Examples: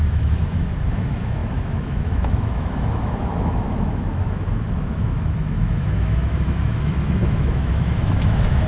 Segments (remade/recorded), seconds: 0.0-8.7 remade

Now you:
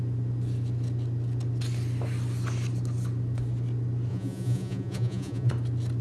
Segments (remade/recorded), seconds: 0.0-4.1 recorded; 4.1-5.5 remade; 5.5-6.0 recorded

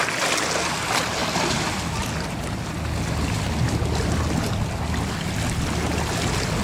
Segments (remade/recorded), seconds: 0.0-6.6 recorded